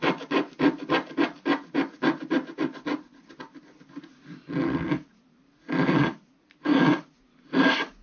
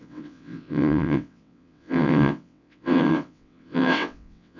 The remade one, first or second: second